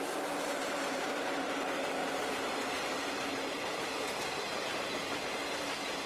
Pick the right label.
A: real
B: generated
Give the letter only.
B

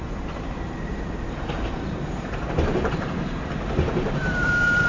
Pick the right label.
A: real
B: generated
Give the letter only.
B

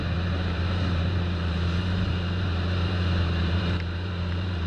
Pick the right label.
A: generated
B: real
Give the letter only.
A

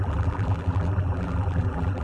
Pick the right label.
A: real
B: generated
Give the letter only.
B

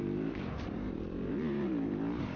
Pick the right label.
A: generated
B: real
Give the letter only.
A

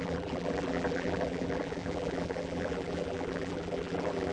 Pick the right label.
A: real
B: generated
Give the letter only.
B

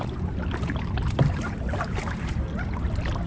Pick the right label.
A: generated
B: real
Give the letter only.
A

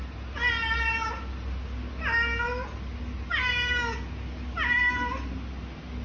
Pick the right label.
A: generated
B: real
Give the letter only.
B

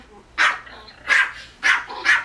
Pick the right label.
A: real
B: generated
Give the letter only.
A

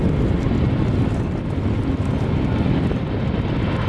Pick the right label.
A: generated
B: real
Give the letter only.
B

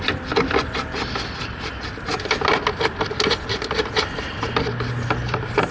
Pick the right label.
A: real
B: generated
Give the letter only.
A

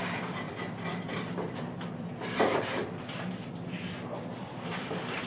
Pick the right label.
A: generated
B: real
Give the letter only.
A